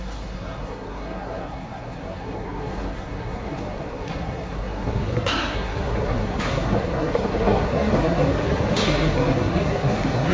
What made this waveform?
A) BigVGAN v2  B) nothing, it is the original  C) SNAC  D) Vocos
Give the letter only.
C